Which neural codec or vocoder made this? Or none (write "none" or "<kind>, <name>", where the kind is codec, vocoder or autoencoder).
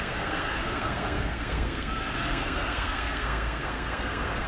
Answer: codec, SNAC